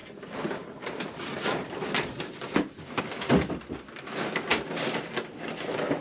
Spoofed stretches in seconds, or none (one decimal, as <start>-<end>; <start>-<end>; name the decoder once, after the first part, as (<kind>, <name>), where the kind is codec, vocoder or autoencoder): none